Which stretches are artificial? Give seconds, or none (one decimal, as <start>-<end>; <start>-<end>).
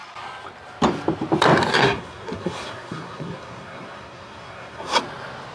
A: 1.7-5.0